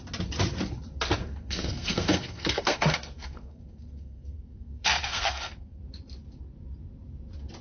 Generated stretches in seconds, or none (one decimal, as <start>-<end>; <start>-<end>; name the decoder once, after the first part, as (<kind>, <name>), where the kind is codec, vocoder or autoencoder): 1.2-5.8 (codec, SNAC)